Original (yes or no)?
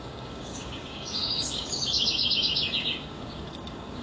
no